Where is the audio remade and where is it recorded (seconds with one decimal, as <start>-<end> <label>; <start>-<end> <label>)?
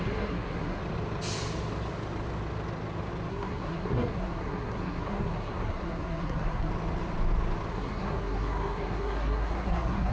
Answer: 0.0-0.8 remade; 0.8-3.3 recorded; 3.3-6.7 remade; 6.7-7.7 recorded; 7.7-10.1 remade